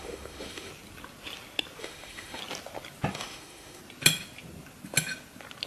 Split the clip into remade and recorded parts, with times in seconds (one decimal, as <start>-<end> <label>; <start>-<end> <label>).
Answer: 0.0-0.7 remade; 0.7-1.8 recorded; 1.8-2.4 remade; 2.4-3.1 recorded; 3.1-3.8 remade; 3.8-5.7 recorded